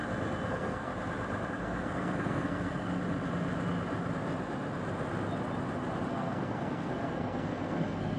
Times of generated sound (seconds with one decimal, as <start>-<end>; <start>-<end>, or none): 0.5-0.9; 1.5-3.0; 6.1-8.2